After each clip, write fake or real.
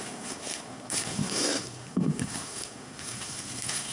fake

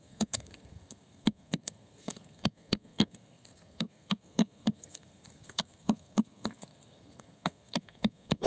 fake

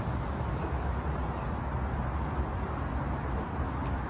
real